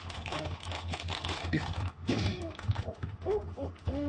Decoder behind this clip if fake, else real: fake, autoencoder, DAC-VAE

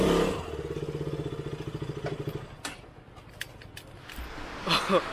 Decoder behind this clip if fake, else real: real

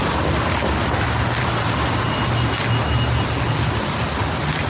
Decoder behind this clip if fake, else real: real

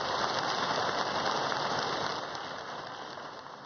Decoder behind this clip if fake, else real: real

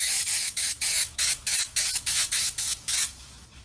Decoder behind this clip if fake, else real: fake, autoencoder, DAC-VAE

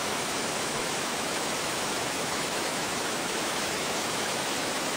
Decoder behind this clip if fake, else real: fake, autoencoder, DAC-VAE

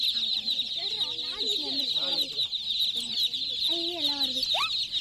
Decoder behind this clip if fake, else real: real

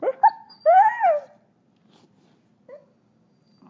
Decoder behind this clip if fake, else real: real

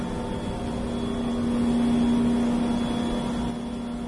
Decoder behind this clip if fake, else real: real